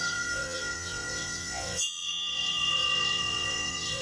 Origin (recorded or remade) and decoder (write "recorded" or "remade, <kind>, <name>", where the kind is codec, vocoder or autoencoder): remade, vocoder, WaveNeXt